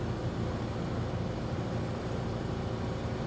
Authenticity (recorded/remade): recorded